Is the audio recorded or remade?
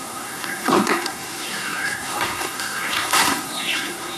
remade